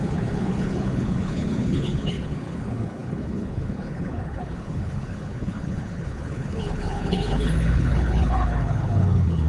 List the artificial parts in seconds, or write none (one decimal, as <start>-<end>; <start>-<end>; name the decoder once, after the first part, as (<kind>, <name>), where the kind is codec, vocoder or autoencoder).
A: 0.0-9.5 (codec, HILCodec)